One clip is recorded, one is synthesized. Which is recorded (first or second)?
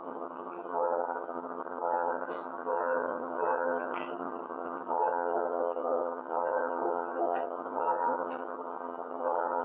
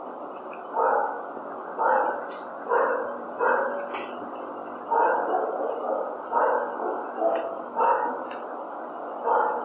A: second